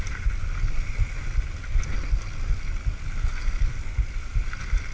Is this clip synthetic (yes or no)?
no